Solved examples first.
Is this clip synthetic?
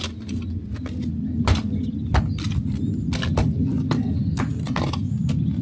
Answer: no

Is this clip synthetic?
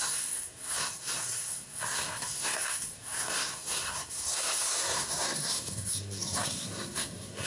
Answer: yes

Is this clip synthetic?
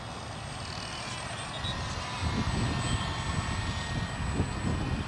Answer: no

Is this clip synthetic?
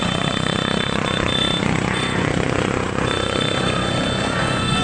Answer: yes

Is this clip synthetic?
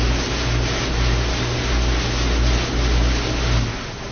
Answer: no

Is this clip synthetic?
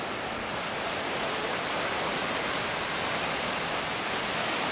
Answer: no